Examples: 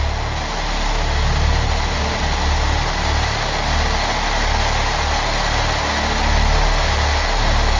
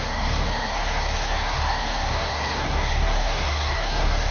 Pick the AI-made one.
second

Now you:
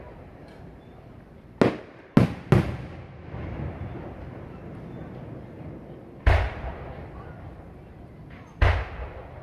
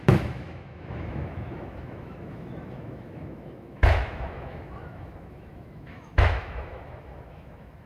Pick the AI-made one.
second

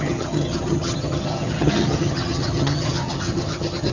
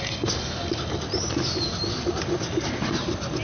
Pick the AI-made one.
first